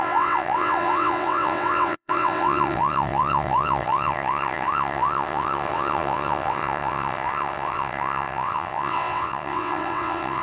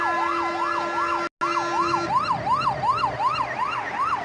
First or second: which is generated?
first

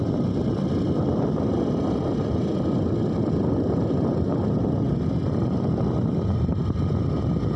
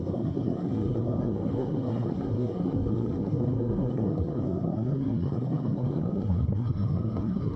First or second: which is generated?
second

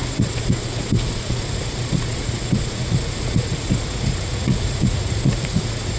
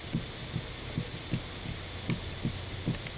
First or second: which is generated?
first